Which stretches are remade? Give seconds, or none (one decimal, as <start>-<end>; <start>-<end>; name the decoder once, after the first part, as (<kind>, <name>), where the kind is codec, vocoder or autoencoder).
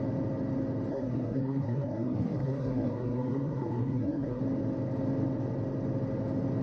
0.9-4.4 (codec, SNAC)